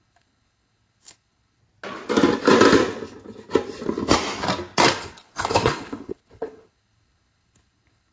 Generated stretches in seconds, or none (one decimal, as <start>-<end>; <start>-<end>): 0.0-1.6; 5.0-8.1